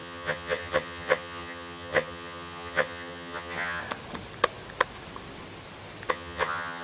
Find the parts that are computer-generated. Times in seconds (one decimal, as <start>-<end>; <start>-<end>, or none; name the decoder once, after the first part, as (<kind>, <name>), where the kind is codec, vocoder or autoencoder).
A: 0.0-3.8 (vocoder, HiFi-GAN); 6.1-6.8